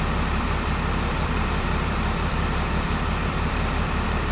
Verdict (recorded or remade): remade